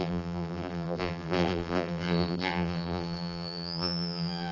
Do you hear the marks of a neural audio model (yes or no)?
yes